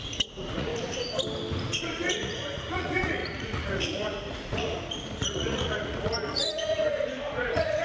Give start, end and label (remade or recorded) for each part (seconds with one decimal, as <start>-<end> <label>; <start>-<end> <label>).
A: 0.0-0.7 remade; 0.7-1.8 recorded; 1.8-7.8 remade

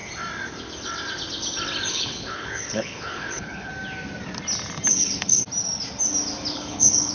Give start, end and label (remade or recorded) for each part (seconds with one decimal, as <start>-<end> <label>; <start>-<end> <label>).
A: 0.0-1.9 recorded; 1.9-3.7 remade; 3.7-4.9 recorded; 4.9-5.4 remade; 5.4-6.5 recorded; 6.5-7.1 remade

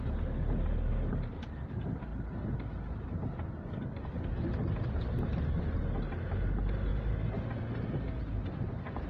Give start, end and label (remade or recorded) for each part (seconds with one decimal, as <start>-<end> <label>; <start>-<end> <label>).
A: 0.0-9.1 recorded

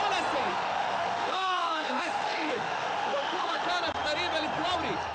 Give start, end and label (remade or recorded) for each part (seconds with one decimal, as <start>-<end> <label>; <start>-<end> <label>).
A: 0.0-0.5 recorded; 0.5-3.6 remade; 3.6-5.1 recorded